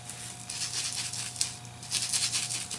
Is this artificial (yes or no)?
no